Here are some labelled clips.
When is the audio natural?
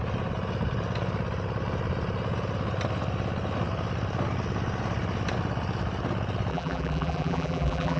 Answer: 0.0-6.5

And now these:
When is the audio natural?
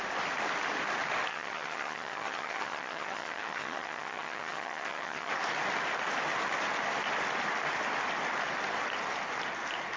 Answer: 0.0-1.3; 5.3-10.0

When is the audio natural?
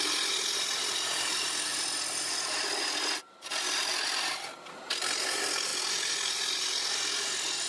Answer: 0.0-7.7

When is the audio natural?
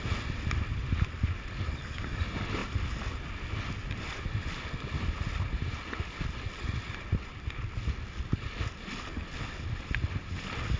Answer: 0.0-10.8